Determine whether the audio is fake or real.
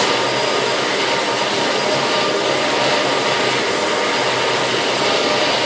real